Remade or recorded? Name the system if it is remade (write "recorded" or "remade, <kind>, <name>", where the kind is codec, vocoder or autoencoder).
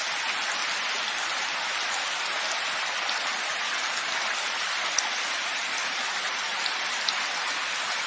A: recorded